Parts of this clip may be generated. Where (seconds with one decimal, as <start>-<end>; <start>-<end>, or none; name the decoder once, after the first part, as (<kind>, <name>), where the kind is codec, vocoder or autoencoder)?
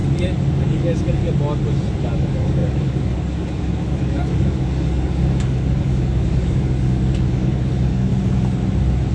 0.5-1.2 (codec, DAC); 2.0-8.1